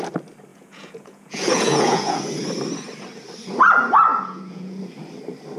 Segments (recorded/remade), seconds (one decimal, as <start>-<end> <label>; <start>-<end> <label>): 0.0-0.5 recorded; 0.5-2.2 remade; 2.2-4.1 recorded; 4.1-4.8 remade; 4.8-5.6 recorded